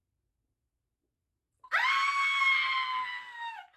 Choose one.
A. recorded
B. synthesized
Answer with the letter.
A